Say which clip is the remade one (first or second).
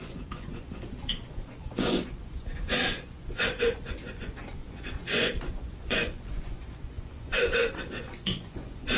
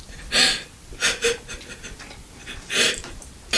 first